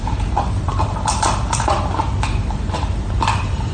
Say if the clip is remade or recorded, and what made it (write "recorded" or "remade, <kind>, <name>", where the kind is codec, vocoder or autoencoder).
remade, vocoder, BigVGAN v2